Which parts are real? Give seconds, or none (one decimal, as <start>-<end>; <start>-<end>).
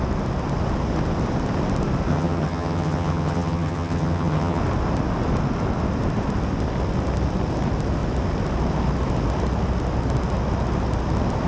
0.0-2.1; 4.6-11.5